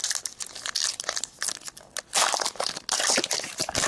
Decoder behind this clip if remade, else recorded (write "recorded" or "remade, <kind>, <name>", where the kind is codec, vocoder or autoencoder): recorded